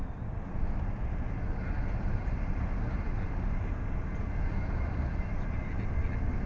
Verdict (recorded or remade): recorded